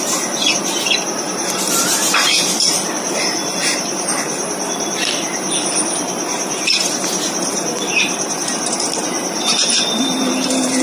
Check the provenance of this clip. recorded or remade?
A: remade